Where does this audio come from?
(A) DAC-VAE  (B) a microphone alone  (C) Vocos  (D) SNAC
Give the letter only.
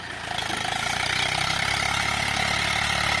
B